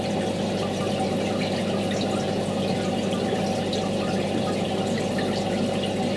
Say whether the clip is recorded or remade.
recorded